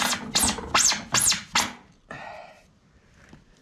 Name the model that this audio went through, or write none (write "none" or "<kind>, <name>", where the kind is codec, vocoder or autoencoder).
none